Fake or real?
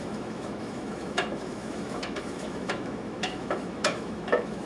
fake